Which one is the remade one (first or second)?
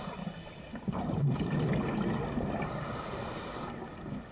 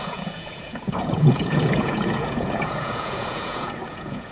second